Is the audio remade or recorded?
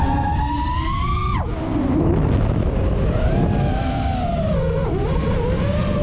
recorded